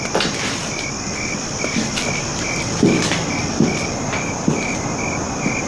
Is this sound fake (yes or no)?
no